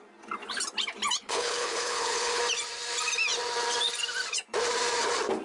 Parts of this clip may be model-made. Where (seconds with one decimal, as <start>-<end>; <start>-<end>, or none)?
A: 1.2-2.4